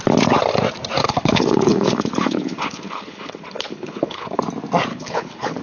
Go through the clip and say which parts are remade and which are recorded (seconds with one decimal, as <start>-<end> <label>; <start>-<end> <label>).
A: 0.0-1.0 recorded; 1.0-4.4 remade; 4.4-4.9 recorded; 4.9-5.6 remade